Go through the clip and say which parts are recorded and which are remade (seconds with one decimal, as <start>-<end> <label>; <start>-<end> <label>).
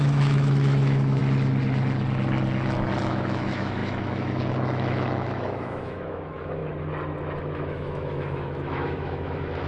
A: 0.0-1.2 remade; 1.2-3.0 recorded; 3.0-6.6 remade; 6.6-7.4 recorded; 7.4-9.7 remade